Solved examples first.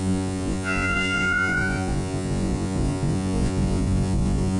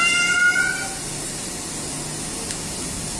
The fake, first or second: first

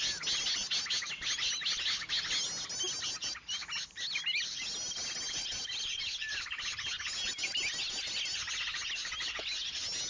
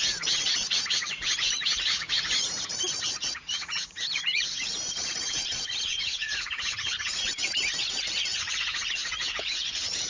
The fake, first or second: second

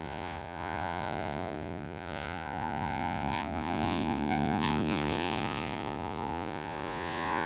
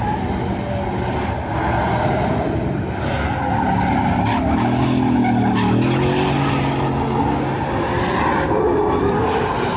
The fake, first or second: first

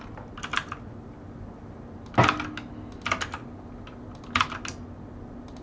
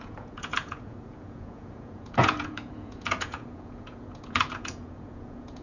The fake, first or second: second